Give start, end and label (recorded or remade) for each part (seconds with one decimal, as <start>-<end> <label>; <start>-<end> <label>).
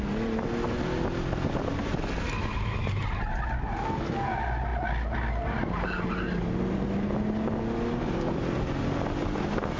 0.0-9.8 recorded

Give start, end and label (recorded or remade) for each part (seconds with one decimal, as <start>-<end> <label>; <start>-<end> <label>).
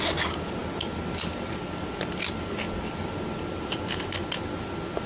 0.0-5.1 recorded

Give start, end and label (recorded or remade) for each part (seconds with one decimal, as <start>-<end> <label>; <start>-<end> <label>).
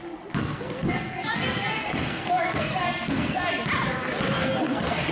0.0-0.4 recorded; 0.4-3.5 remade; 3.5-4.4 recorded; 4.4-5.1 remade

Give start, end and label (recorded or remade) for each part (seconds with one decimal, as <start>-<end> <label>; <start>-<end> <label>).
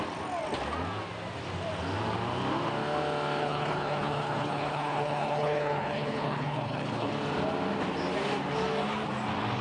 0.0-3.4 recorded; 3.4-7.1 remade; 7.1-9.6 recorded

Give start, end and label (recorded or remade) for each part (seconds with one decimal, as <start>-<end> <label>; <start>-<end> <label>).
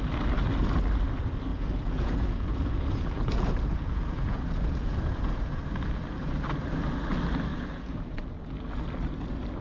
0.0-1.5 recorded; 1.5-5.6 remade; 5.6-7.5 recorded; 7.5-8.2 remade; 8.2-9.6 recorded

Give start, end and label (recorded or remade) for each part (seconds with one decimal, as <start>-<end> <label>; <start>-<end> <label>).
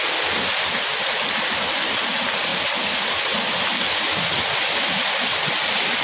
0.0-6.0 recorded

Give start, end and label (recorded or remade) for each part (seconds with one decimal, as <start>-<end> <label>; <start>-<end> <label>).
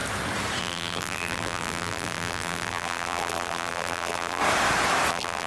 0.0-0.6 recorded; 0.6-4.4 remade; 4.4-5.1 recorded; 5.1-5.5 remade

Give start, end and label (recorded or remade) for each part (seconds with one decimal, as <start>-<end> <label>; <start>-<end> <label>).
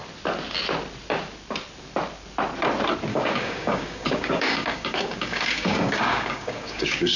0.0-3.1 recorded; 3.1-7.2 remade